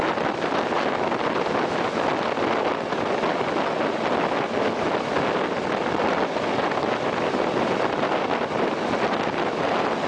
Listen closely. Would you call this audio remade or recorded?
recorded